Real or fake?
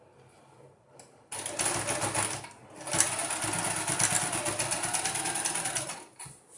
real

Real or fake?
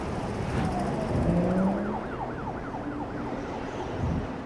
real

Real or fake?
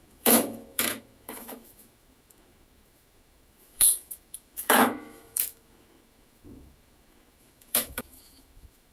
fake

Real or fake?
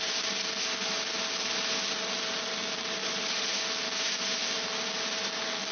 real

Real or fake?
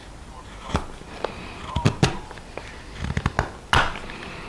real